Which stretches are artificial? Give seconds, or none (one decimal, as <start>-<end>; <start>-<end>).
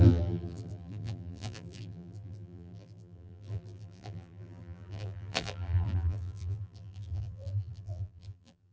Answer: 0.0-8.7